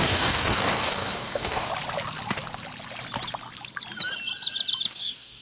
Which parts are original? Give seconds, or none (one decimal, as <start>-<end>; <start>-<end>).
1.7-4.9